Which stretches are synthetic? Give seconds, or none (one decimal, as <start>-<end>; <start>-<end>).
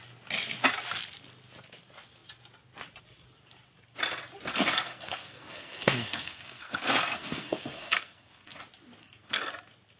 4.5-8.6; 9.0-9.5